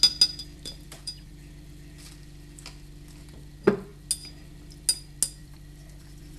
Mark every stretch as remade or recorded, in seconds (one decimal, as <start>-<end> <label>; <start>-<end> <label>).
0.0-0.4 recorded; 0.4-1.3 remade; 1.3-5.4 recorded; 5.4-6.4 remade

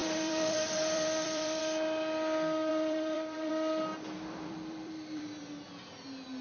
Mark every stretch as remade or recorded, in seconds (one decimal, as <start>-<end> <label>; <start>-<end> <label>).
0.0-1.6 remade; 1.6-2.7 recorded; 2.7-3.5 remade; 3.5-3.9 recorded; 3.9-5.5 remade; 5.5-6.4 recorded

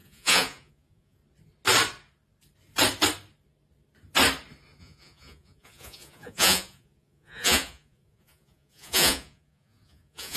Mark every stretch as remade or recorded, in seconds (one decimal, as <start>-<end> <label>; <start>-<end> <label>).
0.0-1.2 remade; 1.2-4.8 recorded; 4.8-10.4 remade

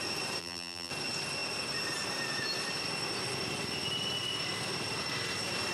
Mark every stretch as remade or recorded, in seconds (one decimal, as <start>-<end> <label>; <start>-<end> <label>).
0.0-0.4 recorded; 0.4-0.9 remade; 0.9-5.7 recorded

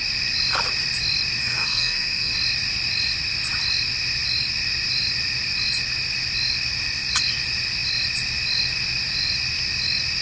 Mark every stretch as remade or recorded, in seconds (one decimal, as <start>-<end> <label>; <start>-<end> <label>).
0.0-1.4 recorded; 1.4-2.3 remade; 2.3-10.2 recorded